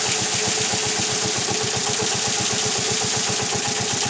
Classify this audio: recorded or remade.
recorded